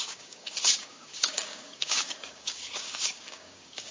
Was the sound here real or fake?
fake